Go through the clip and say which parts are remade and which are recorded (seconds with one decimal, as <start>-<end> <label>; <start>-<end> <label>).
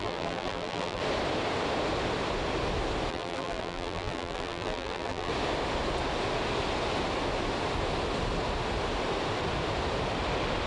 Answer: 0.0-1.0 remade; 1.0-3.1 recorded; 3.1-5.3 remade; 5.3-10.7 recorded